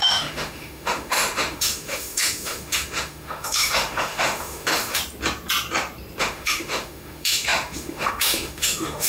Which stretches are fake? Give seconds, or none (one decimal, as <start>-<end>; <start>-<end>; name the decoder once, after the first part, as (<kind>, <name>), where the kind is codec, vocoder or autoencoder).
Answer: 0.0-5.0 (autoencoder, DAC-VAE); 6.2-9.1